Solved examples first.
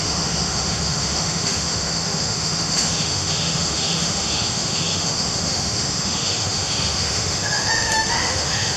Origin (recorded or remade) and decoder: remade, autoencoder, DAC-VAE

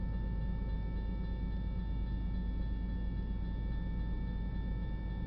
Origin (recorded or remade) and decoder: recorded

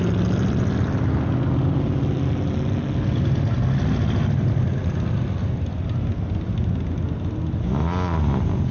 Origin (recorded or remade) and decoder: recorded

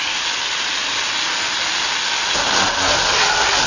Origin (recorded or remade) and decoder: recorded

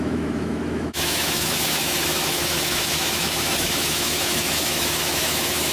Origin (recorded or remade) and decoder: remade, autoencoder, DAC-VAE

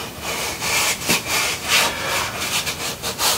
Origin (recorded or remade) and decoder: recorded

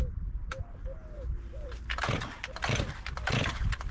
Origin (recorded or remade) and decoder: recorded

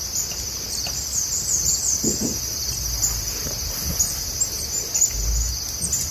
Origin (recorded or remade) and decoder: recorded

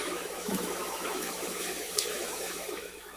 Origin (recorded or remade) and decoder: remade, autoencoder, DAC-VAE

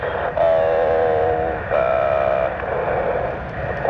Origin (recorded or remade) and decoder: recorded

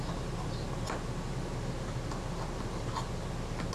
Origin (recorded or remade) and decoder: recorded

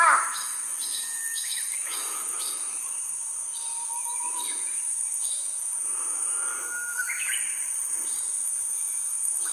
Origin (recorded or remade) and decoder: remade, autoencoder, DAC-VAE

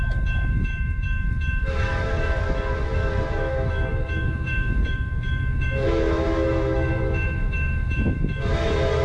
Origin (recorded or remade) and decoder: remade, autoencoder, DAC-VAE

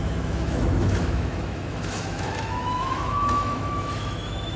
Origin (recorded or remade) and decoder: remade, autoencoder, DAC-VAE